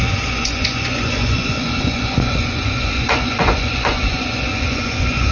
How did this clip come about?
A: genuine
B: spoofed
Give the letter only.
B